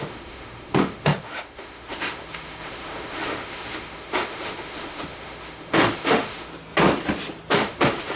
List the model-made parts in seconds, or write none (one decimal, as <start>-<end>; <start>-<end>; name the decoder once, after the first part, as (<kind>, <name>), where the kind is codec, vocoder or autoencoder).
0.0-6.5 (autoencoder, DAC-VAE); 7.5-8.2